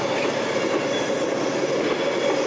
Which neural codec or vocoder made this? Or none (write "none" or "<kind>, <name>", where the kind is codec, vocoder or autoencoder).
none